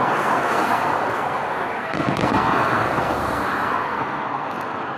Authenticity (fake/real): fake